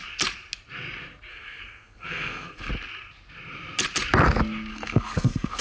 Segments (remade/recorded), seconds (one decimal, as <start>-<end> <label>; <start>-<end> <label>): 0.0-1.3 recorded; 1.3-2.7 remade; 2.7-4.7 recorded; 4.7-5.6 remade